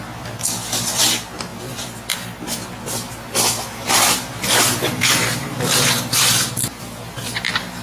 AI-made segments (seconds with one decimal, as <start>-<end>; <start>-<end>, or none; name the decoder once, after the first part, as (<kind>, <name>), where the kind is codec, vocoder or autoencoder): none